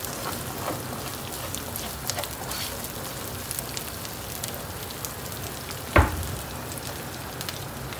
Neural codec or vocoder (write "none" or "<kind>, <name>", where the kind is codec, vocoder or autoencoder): none